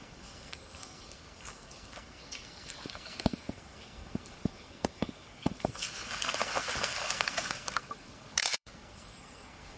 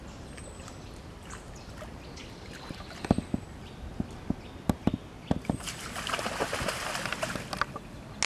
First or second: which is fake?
first